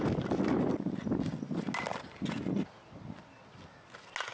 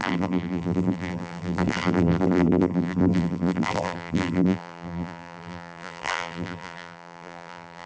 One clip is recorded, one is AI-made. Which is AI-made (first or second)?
second